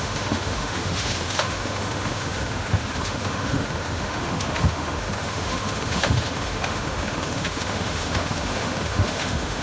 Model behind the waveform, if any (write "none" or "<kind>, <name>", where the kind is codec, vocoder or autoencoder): autoencoder, DAC-VAE